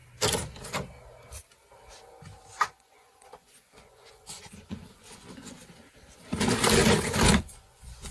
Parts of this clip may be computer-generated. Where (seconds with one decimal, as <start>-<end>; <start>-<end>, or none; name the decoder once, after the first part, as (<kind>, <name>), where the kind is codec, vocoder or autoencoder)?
2.6-5.6 (vocoder, Vocos); 7.4-8.1